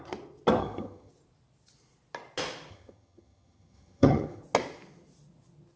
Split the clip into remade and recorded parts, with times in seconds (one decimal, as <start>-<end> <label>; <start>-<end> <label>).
0.0-0.6 recorded; 0.6-1.1 remade; 1.1-2.7 recorded; 2.7-4.4 remade; 4.4-5.8 recorded